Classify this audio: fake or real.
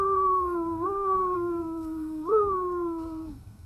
fake